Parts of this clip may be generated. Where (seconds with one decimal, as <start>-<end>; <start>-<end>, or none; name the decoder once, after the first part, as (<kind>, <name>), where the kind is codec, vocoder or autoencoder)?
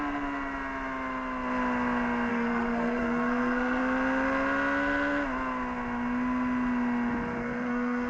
2.3-3.8 (codec, SNAC); 7.4-8.1